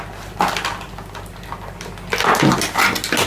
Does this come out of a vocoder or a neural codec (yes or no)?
no